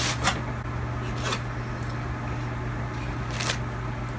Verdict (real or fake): real